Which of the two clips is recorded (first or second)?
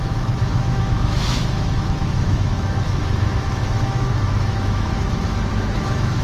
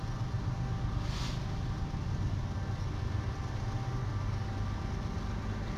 second